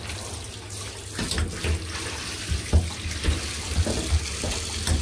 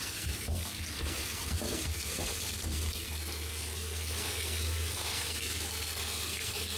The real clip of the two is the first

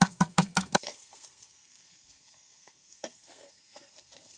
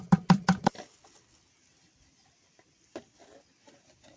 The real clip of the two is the second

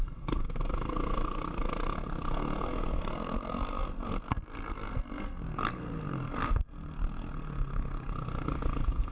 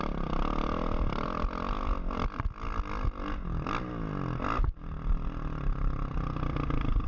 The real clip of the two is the second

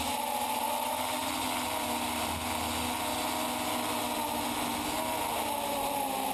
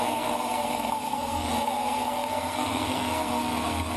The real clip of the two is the first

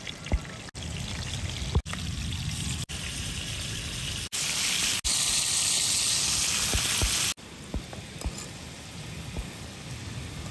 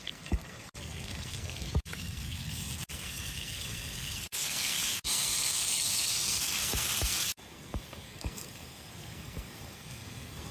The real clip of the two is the first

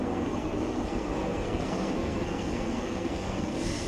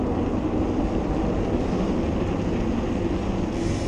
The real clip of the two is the second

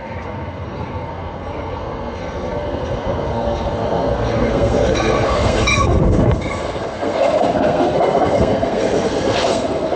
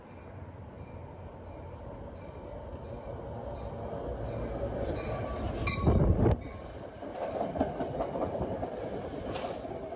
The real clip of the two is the second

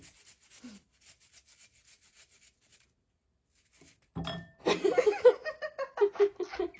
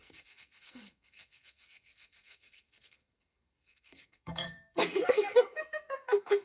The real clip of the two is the first